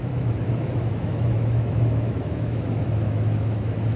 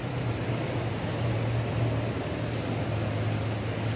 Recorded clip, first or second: second